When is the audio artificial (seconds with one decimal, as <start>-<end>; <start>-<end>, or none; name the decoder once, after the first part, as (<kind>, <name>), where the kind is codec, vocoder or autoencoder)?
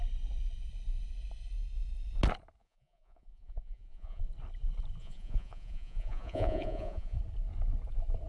2.6-4.2 (vocoder, Vocos); 5.0-7.2